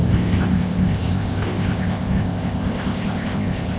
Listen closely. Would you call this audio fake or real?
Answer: fake